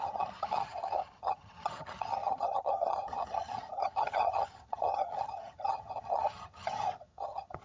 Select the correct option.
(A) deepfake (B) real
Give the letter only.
A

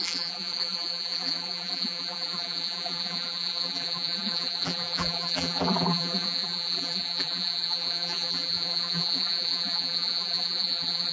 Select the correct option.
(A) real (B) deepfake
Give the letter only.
B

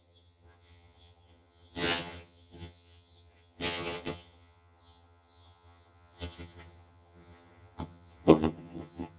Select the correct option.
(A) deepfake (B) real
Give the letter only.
A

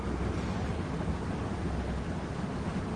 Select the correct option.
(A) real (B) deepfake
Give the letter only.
A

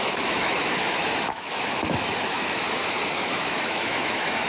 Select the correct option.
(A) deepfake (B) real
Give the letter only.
A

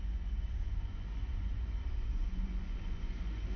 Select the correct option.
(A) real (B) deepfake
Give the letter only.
B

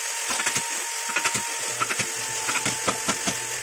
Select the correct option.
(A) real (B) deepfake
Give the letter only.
A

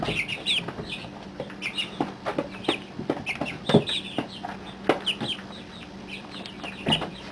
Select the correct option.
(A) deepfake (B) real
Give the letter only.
B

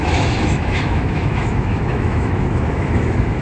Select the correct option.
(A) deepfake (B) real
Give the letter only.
A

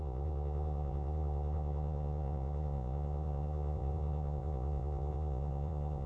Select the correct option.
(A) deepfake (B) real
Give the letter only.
A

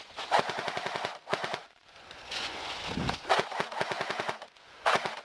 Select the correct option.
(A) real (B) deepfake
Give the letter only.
B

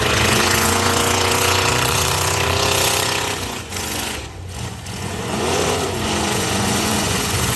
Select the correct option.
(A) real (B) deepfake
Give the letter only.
B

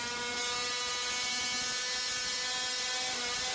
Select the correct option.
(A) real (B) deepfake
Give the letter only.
A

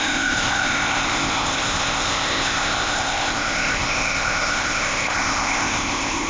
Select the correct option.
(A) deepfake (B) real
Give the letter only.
A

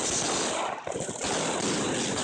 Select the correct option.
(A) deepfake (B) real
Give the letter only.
B